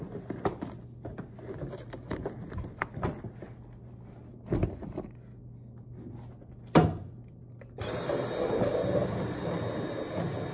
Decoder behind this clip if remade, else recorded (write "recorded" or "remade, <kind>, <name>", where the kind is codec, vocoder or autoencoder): recorded